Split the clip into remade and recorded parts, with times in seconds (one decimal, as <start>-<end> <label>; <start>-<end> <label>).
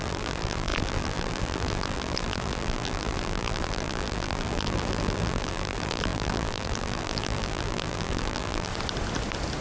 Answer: 0.0-8.7 remade; 8.7-9.6 recorded